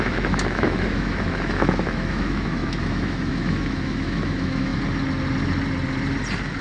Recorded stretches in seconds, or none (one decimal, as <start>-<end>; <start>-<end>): 4.7-6.6